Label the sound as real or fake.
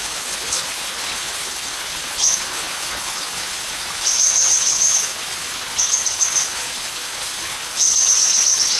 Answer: fake